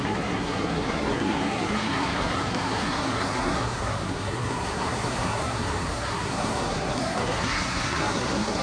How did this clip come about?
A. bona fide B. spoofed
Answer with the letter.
B